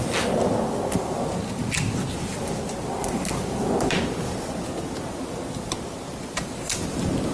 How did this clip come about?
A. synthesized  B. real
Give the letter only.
B